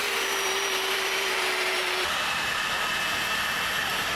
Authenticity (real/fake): fake